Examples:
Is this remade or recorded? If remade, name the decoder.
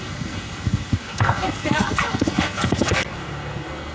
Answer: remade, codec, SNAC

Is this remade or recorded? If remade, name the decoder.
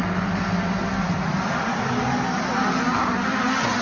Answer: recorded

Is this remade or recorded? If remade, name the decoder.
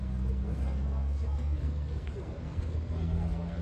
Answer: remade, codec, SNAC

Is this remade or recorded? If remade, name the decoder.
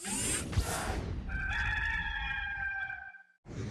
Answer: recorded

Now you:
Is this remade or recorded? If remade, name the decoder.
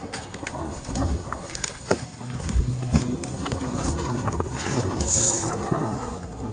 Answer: remade, codec, SNAC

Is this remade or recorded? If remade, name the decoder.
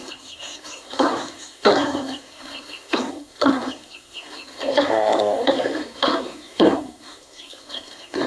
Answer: remade, codec, SNAC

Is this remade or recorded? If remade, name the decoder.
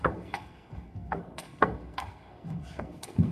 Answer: remade, codec, SNAC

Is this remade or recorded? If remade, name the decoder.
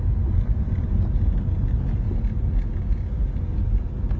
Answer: recorded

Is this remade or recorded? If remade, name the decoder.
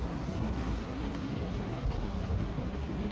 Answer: remade, codec, SNAC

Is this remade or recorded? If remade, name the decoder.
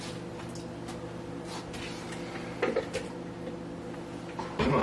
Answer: recorded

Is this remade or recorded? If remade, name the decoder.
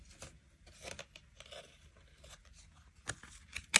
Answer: recorded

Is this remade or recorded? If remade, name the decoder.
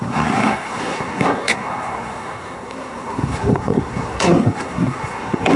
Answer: remade, codec, SNAC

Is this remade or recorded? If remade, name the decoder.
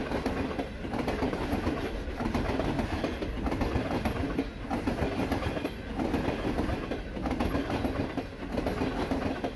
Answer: recorded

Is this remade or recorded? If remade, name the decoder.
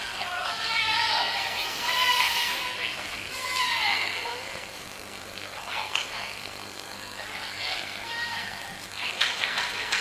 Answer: remade, codec, SNAC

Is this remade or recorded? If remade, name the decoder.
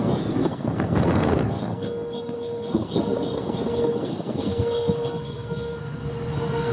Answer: remade, codec, SNAC